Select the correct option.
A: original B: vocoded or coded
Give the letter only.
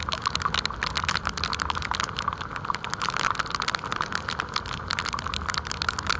A